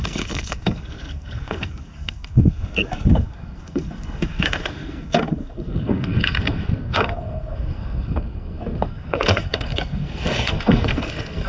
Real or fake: fake